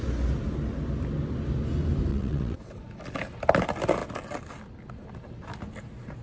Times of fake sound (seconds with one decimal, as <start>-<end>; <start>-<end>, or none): 2.1-2.8